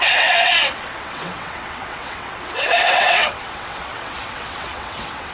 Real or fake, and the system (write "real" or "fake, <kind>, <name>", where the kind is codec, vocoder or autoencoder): fake, vocoder, WaveNeXt